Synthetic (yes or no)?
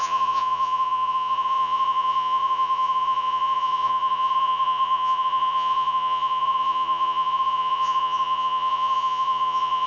yes